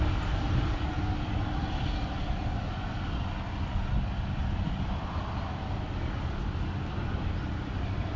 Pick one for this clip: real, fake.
real